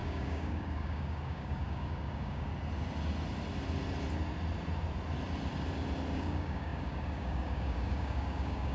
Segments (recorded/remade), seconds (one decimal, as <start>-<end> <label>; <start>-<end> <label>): 0.0-2.5 remade; 2.5-6.1 recorded; 6.1-8.7 remade